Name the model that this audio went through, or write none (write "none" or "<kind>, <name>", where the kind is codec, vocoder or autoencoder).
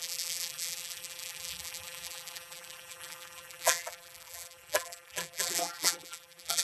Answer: vocoder, BigVGAN v2